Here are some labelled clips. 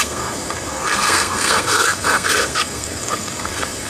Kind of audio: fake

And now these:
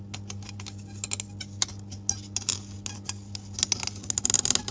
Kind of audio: real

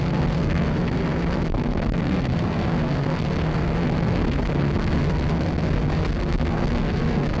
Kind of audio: fake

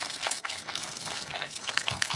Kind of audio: fake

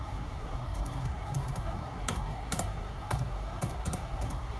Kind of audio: fake